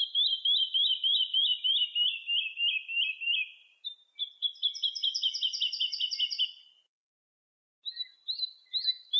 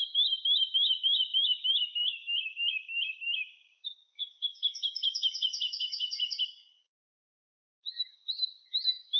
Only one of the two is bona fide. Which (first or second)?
first